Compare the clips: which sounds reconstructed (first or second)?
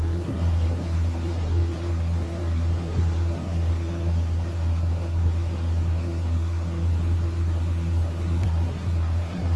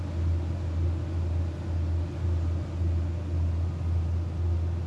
first